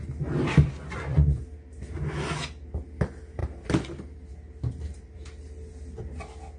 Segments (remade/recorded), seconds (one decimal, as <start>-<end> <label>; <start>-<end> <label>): 0.0-0.9 recorded; 0.9-1.4 remade; 1.4-6.6 recorded